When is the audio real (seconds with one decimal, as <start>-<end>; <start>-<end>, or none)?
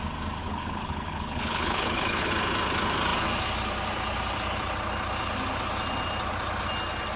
0.0-0.4; 2.3-7.2